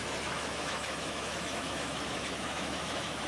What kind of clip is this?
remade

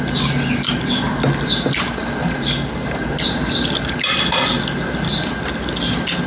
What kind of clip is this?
recorded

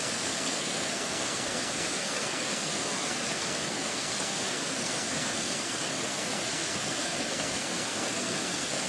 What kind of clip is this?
remade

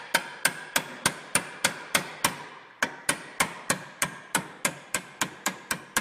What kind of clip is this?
recorded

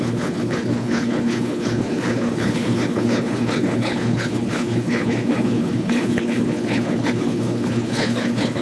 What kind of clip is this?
remade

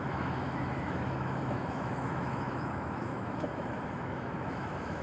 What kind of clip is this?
remade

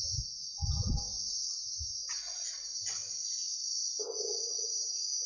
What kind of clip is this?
recorded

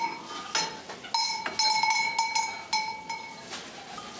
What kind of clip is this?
recorded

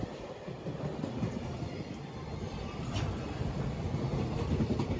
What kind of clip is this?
remade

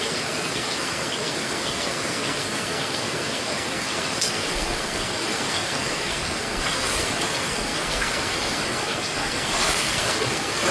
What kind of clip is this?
remade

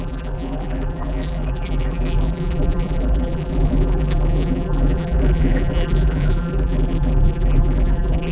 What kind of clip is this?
remade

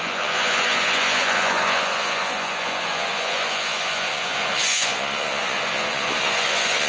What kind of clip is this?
remade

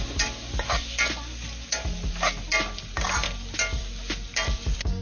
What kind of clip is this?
recorded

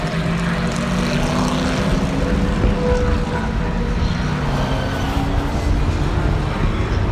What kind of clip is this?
recorded